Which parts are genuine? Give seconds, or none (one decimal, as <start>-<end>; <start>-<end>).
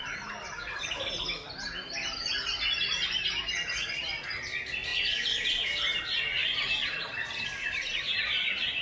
0.0-8.8